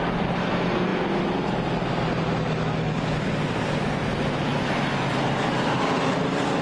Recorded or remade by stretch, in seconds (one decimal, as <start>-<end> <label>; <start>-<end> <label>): 0.0-6.6 recorded